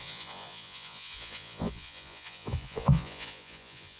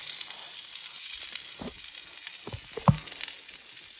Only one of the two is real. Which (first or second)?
second